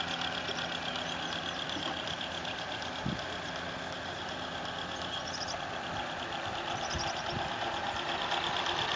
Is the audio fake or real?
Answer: real